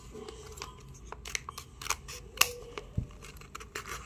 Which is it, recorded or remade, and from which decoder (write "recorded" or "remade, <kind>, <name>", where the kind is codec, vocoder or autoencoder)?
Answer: recorded